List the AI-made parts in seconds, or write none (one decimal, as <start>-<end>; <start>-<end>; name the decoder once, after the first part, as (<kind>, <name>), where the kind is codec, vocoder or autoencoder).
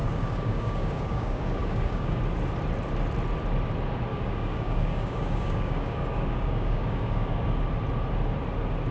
0.0-2.2 (codec, DAC); 4.1-7.5